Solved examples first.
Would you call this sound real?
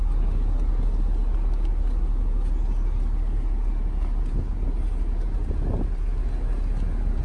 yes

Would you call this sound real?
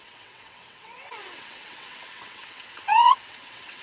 no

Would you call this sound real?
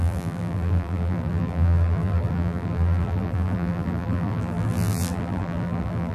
no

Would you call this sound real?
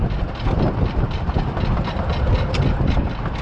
yes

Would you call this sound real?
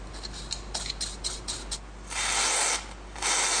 yes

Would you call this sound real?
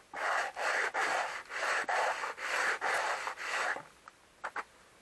no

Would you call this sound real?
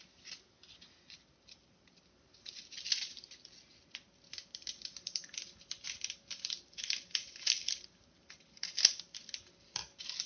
yes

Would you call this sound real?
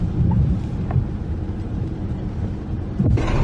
no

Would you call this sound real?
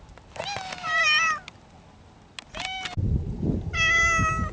yes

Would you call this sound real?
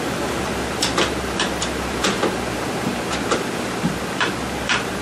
yes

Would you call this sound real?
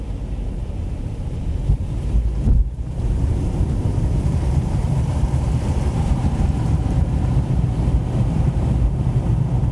no